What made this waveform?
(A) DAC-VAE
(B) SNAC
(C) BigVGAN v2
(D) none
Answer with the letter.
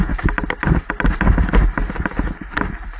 D